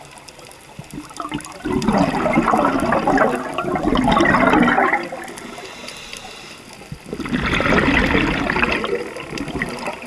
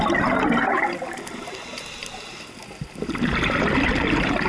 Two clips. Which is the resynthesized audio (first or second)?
second